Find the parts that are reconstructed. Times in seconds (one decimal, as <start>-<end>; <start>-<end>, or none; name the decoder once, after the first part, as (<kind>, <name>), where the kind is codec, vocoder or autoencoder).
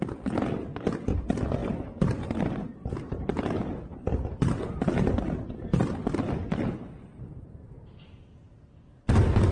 1.6-2.5 (vocoder, BigVGAN v2)